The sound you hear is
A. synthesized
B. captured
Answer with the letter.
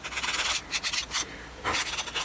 B